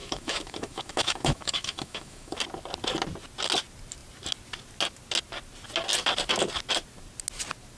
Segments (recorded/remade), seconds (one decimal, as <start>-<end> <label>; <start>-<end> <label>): 0.0-2.4 remade; 2.4-7.8 recorded